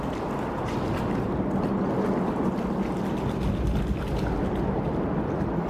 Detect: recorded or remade recorded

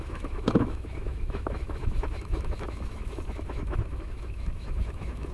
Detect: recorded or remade remade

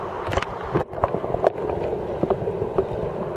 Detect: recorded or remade recorded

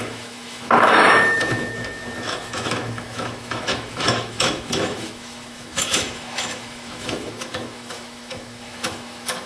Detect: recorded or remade remade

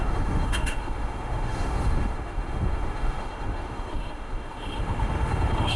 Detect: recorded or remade remade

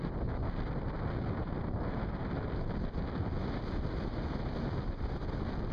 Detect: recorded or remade recorded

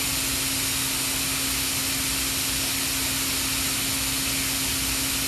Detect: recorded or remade recorded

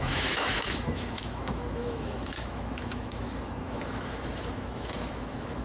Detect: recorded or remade remade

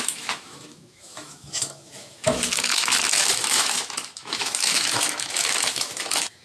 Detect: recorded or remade remade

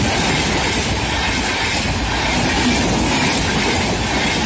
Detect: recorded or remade recorded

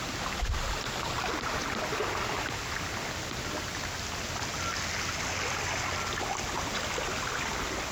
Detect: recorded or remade recorded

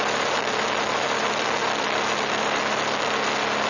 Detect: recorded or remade recorded